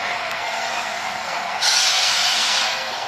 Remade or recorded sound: remade